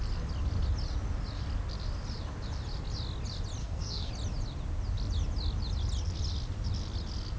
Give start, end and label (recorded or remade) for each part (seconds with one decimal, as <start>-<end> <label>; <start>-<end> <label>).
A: 0.0-3.6 recorded; 3.6-4.1 remade; 4.1-7.4 recorded